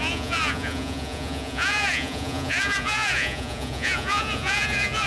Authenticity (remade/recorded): remade